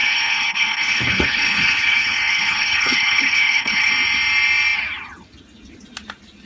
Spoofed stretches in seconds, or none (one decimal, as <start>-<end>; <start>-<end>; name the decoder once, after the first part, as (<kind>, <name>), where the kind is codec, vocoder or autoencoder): 0.0-3.9 (codec, HILCodec)